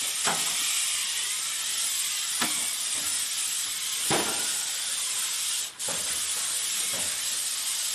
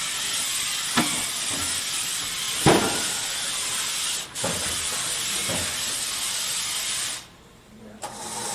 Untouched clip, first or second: second